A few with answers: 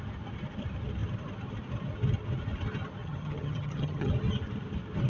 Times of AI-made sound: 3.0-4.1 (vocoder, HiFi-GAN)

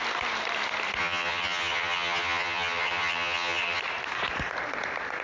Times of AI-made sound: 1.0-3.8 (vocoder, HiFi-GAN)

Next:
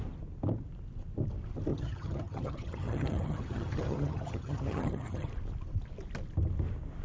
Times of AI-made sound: 1.7-5.3 (vocoder, HiFi-GAN)

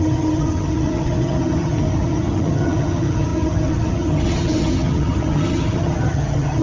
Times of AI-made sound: 0.0-6.6 (vocoder, HiFi-GAN)

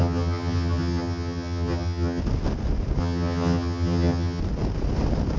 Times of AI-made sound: 0.0-2.2 (vocoder, HiFi-GAN); 3.0-4.4

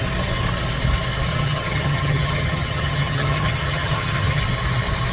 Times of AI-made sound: 1.3-4.4 (vocoder, HiFi-GAN)

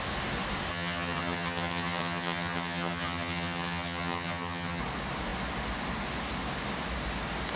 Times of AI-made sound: 0.7-4.8 (vocoder, HiFi-GAN)